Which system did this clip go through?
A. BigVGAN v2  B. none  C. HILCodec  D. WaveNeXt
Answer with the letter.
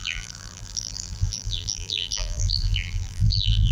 A